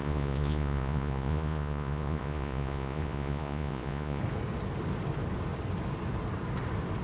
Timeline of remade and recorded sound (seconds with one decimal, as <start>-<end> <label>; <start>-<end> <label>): 0.0-4.2 remade; 4.2-7.0 recorded